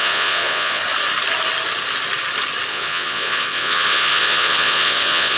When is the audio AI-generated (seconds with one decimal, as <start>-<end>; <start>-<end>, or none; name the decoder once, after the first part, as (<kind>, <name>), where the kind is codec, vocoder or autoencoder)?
0.0-0.8 (vocoder, Vocos); 2.7-5.4